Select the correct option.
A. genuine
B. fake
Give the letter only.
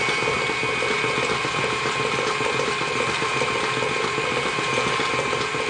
A